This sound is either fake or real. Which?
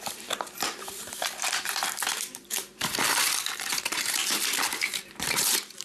fake